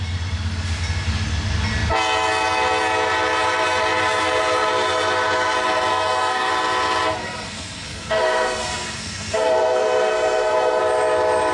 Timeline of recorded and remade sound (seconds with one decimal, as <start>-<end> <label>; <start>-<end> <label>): 0.0-5.9 recorded; 5.9-6.5 remade; 6.5-7.2 recorded; 7.2-10.8 remade; 10.8-11.5 recorded